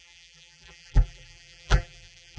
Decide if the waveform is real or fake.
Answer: fake